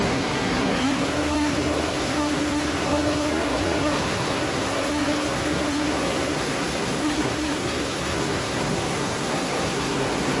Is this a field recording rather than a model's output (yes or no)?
no